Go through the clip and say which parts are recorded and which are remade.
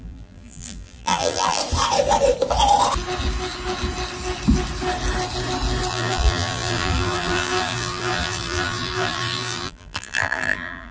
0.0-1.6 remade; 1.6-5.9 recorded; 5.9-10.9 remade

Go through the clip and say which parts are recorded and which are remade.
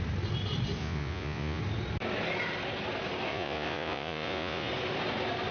0.0-0.8 recorded; 0.8-1.6 remade; 1.6-3.3 recorded; 3.3-4.7 remade; 4.7-5.5 recorded